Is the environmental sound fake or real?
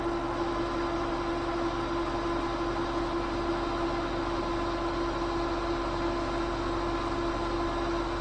real